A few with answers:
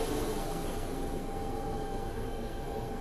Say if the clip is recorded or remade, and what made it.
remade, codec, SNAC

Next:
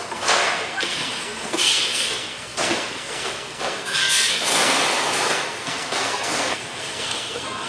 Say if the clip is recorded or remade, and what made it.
remade, codec, SNAC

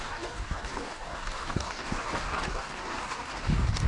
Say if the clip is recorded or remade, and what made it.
remade, codec, DAC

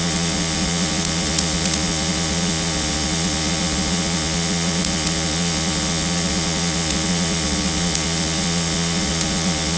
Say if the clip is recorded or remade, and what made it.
remade, vocoder, Vocos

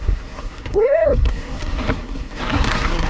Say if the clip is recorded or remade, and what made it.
remade, codec, SNAC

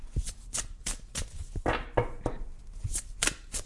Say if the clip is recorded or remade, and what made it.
recorded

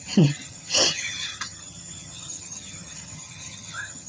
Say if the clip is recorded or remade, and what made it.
remade, vocoder, HiFi-GAN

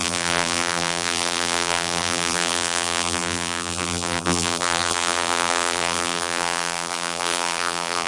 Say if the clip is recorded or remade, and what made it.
remade, vocoder, BigVGAN v2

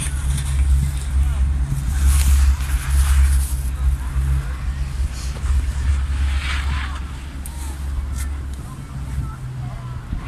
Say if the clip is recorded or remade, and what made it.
recorded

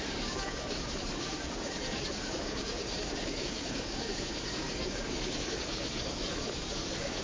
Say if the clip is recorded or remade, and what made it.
remade, codec, DAC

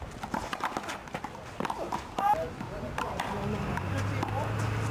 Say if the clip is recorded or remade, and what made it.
recorded